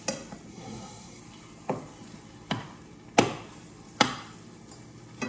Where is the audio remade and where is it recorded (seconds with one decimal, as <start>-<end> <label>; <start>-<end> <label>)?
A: 0.0-0.5 recorded; 0.5-1.2 remade; 1.2-5.3 recorded